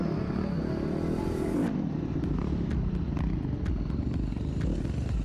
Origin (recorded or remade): recorded